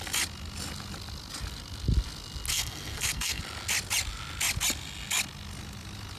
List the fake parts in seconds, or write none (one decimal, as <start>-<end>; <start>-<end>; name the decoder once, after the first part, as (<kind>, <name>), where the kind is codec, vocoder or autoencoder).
2.5-3.4 (codec, SNAC)